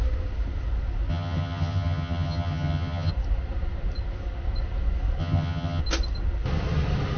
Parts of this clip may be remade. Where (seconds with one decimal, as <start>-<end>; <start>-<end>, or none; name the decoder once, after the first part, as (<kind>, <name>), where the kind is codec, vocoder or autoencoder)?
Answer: 1.1-3.1 (vocoder, HiFi-GAN); 5.2-5.8